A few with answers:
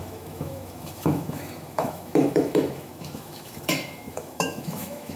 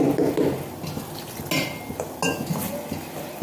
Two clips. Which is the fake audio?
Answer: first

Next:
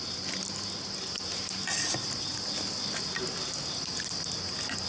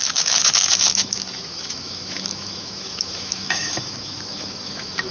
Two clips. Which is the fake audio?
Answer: second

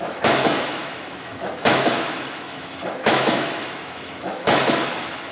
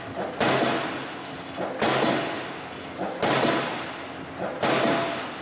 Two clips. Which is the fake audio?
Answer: first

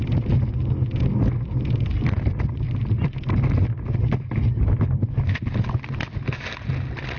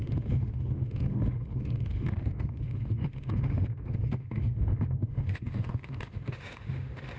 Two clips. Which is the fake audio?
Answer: second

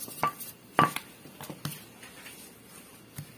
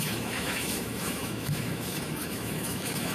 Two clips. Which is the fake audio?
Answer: second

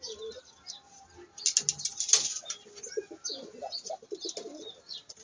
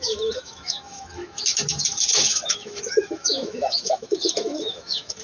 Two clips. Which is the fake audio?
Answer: second